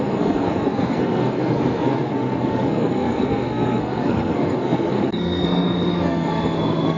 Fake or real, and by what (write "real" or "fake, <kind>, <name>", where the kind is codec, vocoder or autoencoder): fake, codec, SNAC